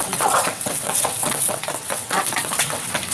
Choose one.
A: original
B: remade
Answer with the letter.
B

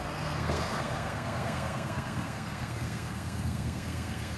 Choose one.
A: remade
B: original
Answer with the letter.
A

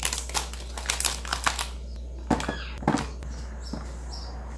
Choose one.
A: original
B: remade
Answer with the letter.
A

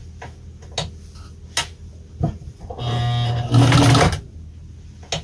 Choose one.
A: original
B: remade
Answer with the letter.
A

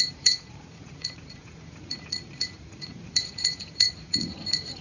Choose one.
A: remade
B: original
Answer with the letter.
A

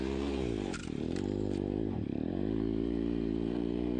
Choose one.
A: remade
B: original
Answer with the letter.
A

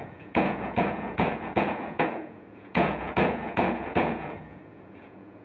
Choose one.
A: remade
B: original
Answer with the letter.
A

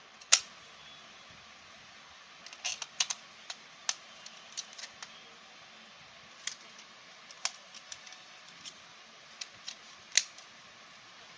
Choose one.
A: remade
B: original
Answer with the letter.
B